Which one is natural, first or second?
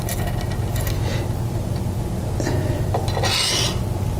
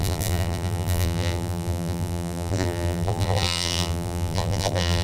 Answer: first